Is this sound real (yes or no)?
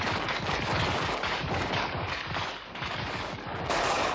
no